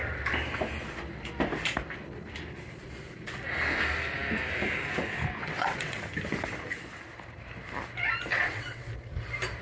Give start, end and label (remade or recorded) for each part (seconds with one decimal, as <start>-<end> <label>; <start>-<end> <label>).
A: 0.0-5.4 recorded; 5.4-6.0 remade; 6.0-8.3 recorded; 8.3-8.9 remade; 8.9-9.6 recorded